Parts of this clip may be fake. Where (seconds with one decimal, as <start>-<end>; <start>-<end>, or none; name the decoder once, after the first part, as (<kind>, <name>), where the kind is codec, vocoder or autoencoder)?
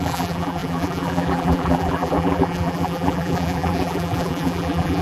0.0-5.0 (vocoder, BigVGAN v2)